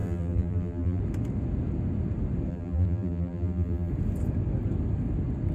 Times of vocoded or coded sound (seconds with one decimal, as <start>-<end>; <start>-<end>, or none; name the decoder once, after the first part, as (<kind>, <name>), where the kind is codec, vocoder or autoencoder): 0.0-1.0 (vocoder, BigVGAN v2); 2.5-3.9